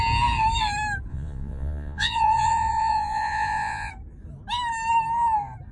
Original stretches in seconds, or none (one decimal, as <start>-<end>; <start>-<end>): 0.0-1.1; 3.9-5.7